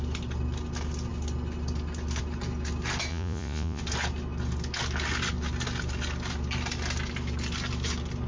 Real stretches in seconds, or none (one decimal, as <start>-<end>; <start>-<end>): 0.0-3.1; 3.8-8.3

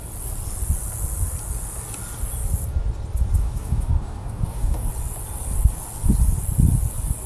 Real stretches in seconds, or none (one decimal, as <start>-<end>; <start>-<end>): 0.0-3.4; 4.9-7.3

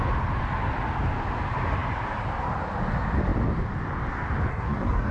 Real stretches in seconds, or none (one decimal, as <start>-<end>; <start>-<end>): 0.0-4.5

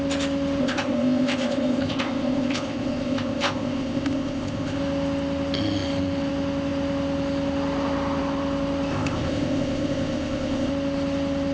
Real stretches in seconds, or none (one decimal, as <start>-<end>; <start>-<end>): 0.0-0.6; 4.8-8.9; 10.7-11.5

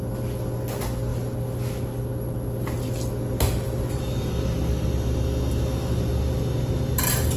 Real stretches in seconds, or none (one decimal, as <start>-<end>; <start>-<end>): 0.0-7.4

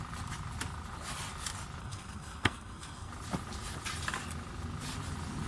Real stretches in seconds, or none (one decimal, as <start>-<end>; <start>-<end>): 0.0-1.8; 3.1-5.5

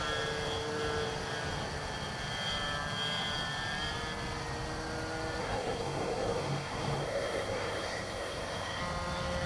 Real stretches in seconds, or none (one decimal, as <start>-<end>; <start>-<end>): 0.0-5.4; 8.8-9.5